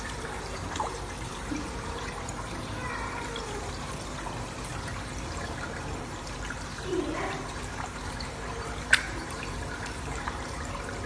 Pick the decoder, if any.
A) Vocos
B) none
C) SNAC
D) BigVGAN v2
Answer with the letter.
D